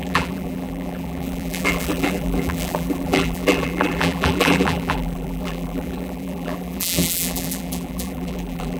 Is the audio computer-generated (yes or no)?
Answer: yes